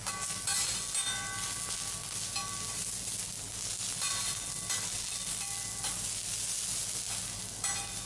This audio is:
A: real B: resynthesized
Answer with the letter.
A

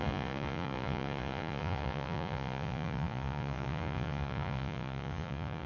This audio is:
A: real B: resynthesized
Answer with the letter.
B